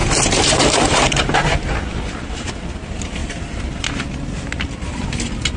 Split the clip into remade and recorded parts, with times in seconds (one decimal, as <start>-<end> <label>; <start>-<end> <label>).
0.0-1.7 remade; 1.7-3.2 recorded; 3.2-4.0 remade; 4.0-5.6 recorded